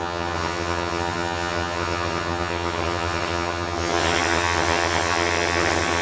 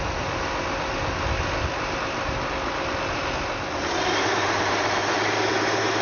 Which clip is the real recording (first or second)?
second